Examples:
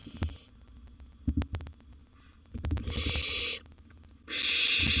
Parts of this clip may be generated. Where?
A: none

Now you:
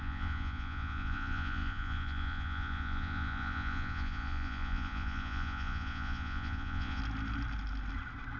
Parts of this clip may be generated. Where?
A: 0.0-7.0

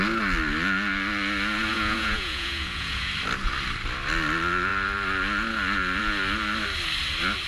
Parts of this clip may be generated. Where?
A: 1.7-3.1

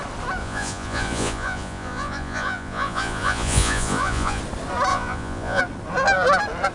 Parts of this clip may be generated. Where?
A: 0.4-4.4; 4.9-5.6

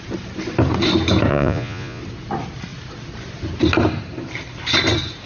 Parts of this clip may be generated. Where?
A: 1.3-2.0

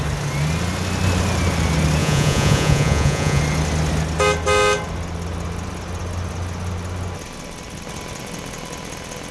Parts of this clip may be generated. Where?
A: 2.0-3.4

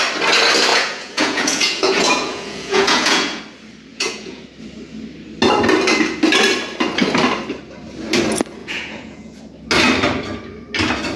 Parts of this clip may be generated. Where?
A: 0.7-3.4; 3.9-4.4; 8.6-9.4

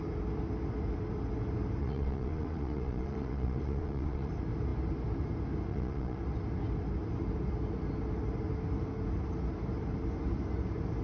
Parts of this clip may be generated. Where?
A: 1.8-4.3; 5.7-6.2